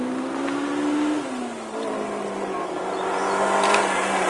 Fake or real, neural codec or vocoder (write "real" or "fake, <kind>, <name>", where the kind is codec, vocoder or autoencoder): real